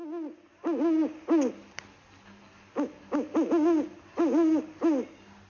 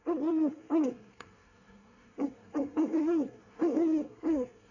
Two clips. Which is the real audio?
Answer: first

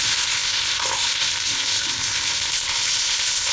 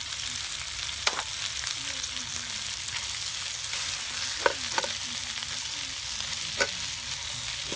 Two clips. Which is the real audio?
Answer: second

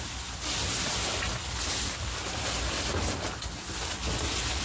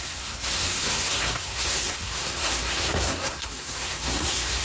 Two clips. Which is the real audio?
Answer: first